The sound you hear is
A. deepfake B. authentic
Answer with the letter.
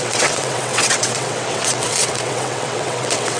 A